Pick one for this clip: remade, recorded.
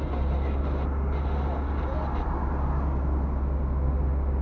recorded